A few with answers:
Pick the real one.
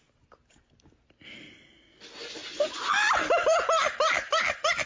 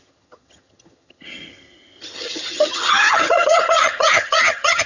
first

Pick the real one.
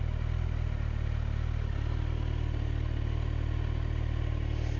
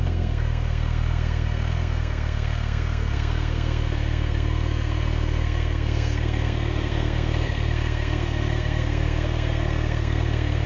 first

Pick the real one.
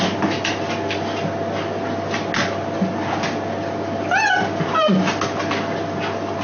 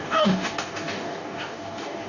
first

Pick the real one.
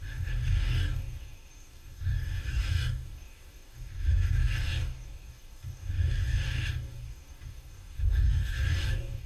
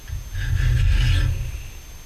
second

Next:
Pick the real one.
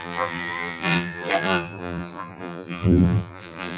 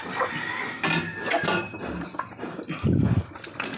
second